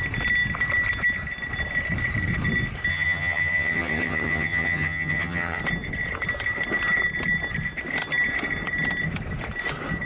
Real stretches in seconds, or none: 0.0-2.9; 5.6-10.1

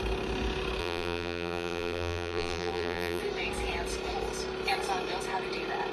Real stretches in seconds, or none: 0.0-0.8; 3.2-5.9

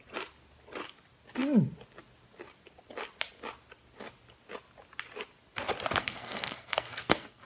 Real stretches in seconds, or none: 0.0-6.0

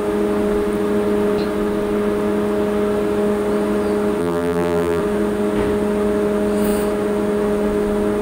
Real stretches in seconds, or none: 0.0-4.2; 5.0-8.2

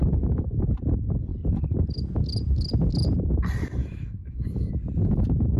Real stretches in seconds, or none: 0.0-3.8; 4.7-5.6

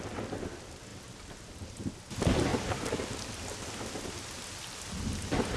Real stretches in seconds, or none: 0.0-2.5; 3.4-5.6

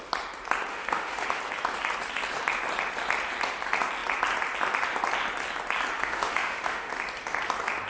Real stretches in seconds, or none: 0.0-0.7; 1.4-6.0; 6.9-7.9

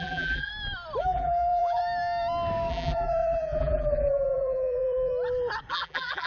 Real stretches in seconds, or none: 0.5-1.0; 1.8-2.7; 5.1-5.7